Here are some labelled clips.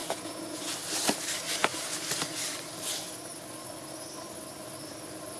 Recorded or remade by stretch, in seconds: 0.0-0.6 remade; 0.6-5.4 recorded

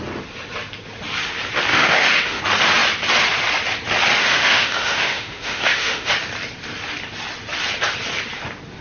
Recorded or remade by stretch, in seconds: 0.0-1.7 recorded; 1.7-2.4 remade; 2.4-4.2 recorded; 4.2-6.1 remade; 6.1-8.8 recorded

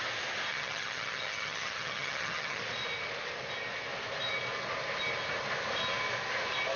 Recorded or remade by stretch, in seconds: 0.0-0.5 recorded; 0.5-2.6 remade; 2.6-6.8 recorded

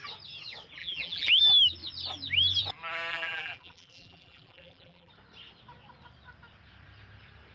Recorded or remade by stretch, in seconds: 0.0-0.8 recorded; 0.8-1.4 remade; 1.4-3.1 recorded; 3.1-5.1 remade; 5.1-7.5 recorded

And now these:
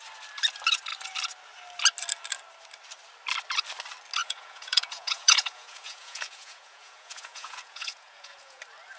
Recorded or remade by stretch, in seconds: 0.0-4.2 recorded; 4.2-8.6 remade; 8.6-9.0 recorded